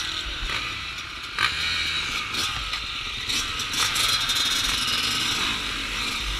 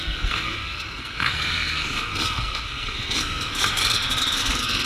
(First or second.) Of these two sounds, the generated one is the second